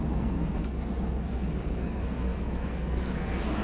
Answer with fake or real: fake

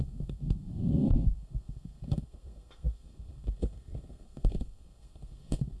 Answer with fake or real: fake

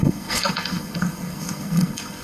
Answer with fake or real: fake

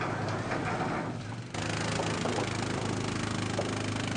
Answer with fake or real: real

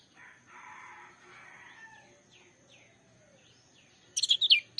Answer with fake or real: real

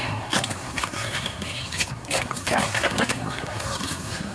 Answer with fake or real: fake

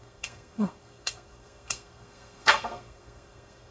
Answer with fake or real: fake